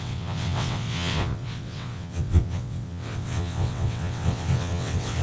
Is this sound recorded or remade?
remade